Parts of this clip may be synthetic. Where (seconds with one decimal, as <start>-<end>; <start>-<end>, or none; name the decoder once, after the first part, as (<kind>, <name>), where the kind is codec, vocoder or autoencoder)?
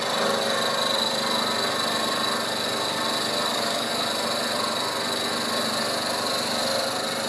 3.5-4.0 (codec, DAC)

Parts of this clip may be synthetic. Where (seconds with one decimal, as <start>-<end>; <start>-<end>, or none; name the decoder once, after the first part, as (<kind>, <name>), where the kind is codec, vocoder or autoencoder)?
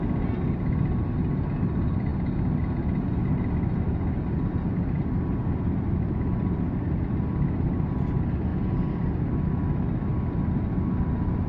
none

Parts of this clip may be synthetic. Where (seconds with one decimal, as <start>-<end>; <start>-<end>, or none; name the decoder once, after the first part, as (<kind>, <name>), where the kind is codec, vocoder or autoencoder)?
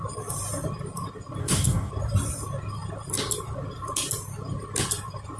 1.4-1.9 (codec, DAC)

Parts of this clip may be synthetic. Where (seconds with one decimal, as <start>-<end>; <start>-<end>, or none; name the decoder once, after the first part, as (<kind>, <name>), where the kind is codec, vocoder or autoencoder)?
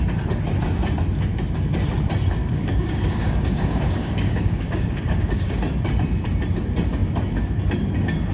2.4-5.6 (codec, DAC)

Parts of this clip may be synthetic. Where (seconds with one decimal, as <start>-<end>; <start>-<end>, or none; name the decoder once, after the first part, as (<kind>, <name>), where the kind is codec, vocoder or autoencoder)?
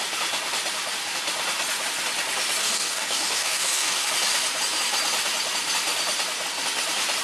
2.6-4.1 (codec, DAC)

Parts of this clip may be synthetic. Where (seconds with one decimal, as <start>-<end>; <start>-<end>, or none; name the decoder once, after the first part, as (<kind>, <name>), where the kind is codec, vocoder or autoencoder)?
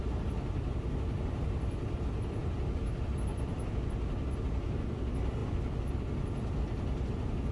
none